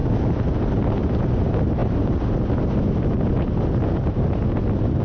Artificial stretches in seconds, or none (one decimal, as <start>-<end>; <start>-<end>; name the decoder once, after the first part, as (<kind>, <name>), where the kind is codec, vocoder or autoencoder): none